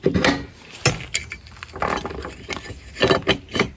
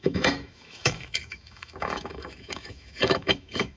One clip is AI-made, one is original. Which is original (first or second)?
first